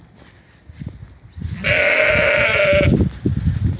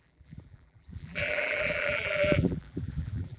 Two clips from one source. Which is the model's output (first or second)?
second